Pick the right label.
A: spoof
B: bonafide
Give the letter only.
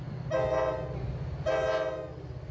B